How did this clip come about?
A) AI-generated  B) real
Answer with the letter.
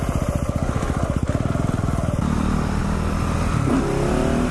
B